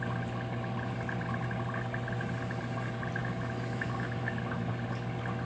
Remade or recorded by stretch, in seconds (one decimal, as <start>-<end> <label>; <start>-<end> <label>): 0.0-3.2 recorded; 3.2-4.7 remade; 4.7-5.4 recorded

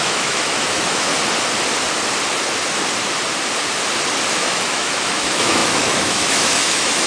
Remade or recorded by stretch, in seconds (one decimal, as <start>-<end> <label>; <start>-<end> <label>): 0.0-1.1 remade; 1.1-4.3 recorded; 4.3-7.1 remade

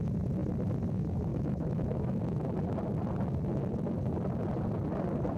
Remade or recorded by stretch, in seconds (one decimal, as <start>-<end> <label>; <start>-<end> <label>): 0.0-1.3 recorded; 1.3-2.2 remade; 2.2-5.4 recorded